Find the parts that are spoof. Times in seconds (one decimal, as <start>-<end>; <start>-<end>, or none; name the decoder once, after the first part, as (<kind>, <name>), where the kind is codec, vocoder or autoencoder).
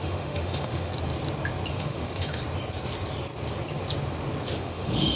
0.0-0.9 (autoencoder, DAC-VAE); 1.7-2.4; 4.6-5.2